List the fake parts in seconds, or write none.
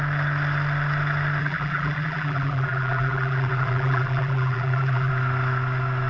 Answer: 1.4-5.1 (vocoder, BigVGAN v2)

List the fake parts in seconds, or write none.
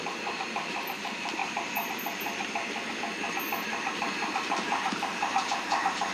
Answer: 0.0-6.1 (vocoder, BigVGAN v2)